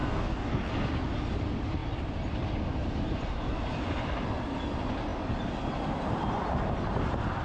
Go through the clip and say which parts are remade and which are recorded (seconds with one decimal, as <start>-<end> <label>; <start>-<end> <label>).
0.0-0.7 remade; 0.7-7.4 recorded